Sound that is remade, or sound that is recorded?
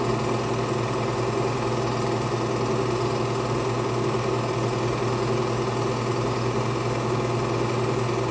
recorded